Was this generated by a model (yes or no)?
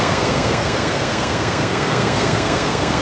yes